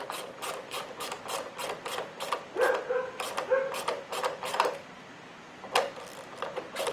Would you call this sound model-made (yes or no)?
no